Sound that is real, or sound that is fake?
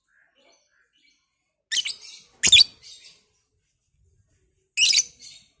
real